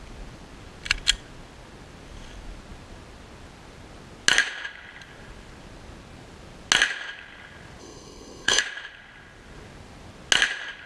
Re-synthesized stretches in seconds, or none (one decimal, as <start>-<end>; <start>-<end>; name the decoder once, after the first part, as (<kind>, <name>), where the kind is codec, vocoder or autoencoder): 7.8-8.6 (codec, SNAC)